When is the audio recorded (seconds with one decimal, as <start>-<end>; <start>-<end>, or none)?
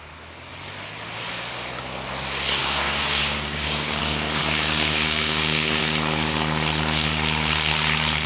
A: 0.0-2.6; 4.0-4.4; 5.8-8.3